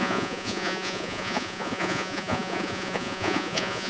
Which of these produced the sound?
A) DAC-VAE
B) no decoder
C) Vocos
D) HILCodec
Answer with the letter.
C